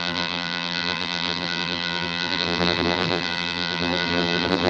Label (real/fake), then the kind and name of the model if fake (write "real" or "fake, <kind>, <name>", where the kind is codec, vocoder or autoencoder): fake, vocoder, BigVGAN v2